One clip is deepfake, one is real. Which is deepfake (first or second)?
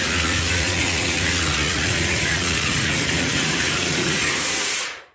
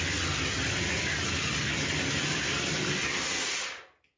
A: first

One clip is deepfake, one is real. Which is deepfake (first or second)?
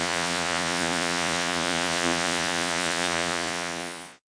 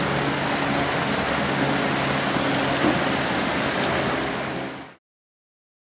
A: first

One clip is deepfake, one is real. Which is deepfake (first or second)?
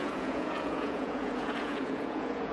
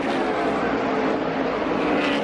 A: first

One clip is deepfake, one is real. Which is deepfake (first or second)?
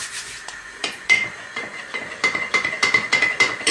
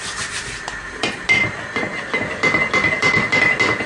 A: first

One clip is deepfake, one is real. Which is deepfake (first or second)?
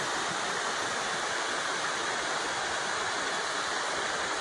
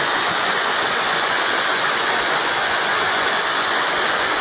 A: second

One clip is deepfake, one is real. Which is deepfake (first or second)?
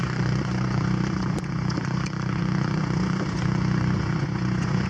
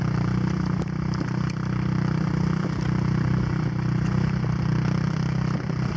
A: first